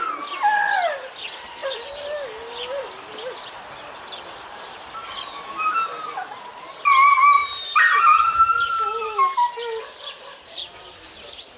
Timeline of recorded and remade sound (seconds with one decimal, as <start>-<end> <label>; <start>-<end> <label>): 0.0-1.6 recorded; 1.6-5.7 remade; 5.7-11.6 recorded